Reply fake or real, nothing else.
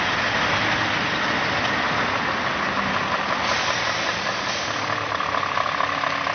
real